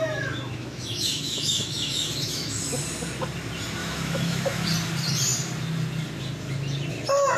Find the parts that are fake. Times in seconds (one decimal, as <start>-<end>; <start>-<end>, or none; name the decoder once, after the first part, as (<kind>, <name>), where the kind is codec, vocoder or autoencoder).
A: 0.0-2.6 (autoencoder, DAC-VAE); 3.8-4.7